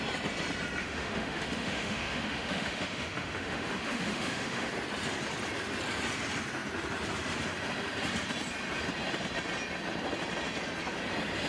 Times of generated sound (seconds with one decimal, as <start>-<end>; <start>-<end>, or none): 0.8-4.7